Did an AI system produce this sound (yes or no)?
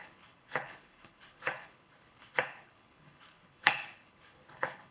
yes